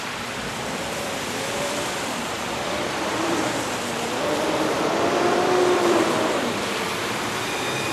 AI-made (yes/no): yes